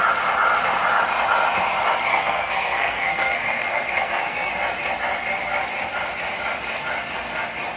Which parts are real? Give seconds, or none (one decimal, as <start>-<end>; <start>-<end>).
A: 0.0-2.1; 4.5-7.8